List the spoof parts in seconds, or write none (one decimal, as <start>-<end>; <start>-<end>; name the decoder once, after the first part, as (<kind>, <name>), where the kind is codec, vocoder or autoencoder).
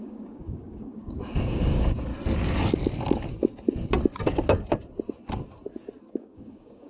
0.0-2.1 (codec, DAC); 6.1-6.9